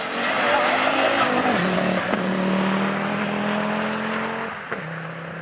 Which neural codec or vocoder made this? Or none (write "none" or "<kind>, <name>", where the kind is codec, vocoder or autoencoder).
none